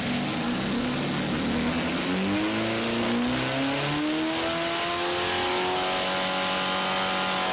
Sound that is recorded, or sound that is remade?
recorded